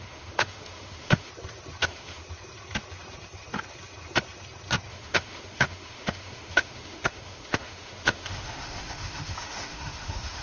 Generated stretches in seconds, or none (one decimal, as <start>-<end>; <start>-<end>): 0.0-1.3; 1.8-2.2; 4.9-10.4